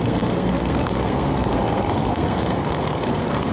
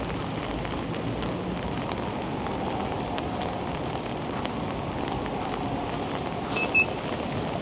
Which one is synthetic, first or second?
first